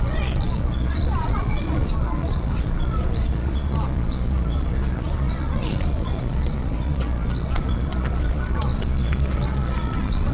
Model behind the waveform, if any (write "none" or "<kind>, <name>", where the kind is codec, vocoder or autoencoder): vocoder, Vocos